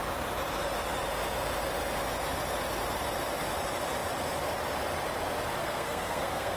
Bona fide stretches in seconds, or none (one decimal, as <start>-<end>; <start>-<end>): 0.0-5.6